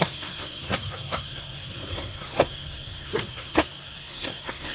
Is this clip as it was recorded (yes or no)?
no